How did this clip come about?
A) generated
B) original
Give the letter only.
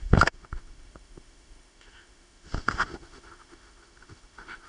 A